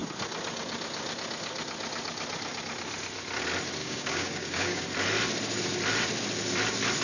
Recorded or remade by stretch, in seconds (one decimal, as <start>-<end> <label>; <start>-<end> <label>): 0.0-3.8 recorded; 3.8-4.8 remade; 4.8-7.0 recorded